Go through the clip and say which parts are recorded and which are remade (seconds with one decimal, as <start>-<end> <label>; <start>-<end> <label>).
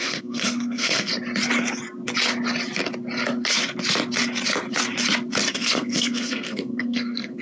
0.0-1.1 remade; 1.1-5.5 recorded; 5.5-7.4 remade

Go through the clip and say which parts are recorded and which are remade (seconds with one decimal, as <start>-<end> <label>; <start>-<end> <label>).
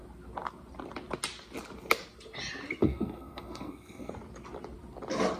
0.0-2.8 recorded; 2.8-4.1 remade; 4.1-5.4 recorded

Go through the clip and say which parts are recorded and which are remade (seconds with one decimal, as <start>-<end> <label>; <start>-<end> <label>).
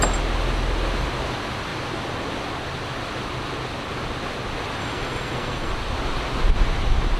0.0-4.8 recorded; 4.8-5.7 remade; 5.7-7.2 recorded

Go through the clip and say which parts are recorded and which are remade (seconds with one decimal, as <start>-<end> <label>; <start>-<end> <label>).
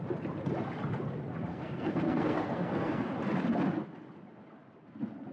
0.0-1.5 recorded; 1.5-3.1 remade; 3.1-5.3 recorded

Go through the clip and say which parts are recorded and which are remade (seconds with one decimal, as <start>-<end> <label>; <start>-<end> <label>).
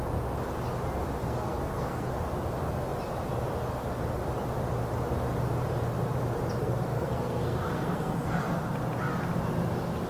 0.0-1.2 recorded; 1.2-2.1 remade; 2.1-6.6 recorded; 6.6-8.6 remade; 8.6-10.1 recorded